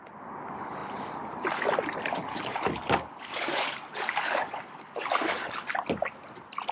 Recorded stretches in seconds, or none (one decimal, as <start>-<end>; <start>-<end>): 0.0-2.3; 5.6-6.7